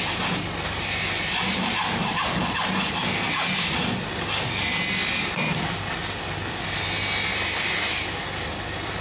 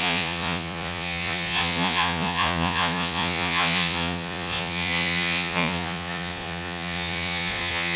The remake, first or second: second